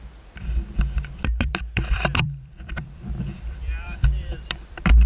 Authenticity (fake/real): fake